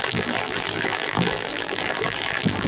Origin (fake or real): fake